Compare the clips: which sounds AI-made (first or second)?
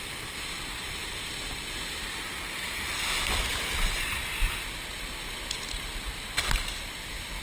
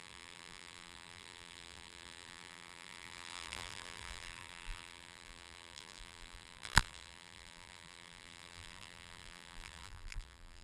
second